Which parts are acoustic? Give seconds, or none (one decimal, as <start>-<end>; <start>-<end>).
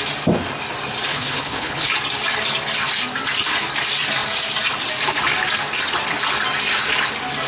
0.0-1.1; 1.9-7.5